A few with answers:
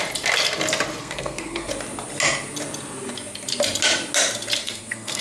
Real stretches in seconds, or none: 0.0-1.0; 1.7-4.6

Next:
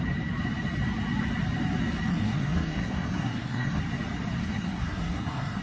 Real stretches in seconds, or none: 0.0-2.1; 3.8-4.4

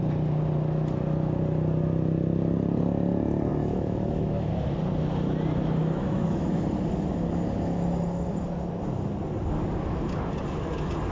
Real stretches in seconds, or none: 0.0-3.5; 4.5-5.8; 6.6-11.1

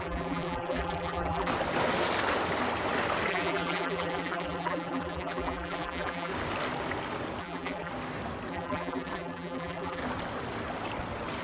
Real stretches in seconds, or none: 1.5-3.3; 6.3-7.4; 7.9-8.5; 10.0-11.4

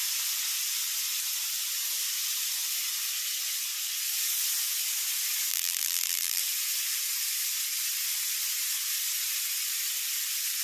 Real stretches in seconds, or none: 0.0-5.5; 6.4-10.6